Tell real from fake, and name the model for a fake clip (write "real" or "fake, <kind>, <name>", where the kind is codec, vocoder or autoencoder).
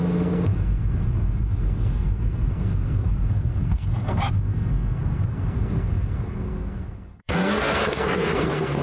fake, codec, SNAC